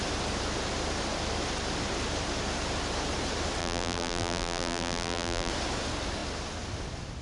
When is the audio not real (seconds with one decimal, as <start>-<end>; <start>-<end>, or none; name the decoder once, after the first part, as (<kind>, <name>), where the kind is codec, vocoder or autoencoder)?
3.6-5.5 (vocoder, BigVGAN v2)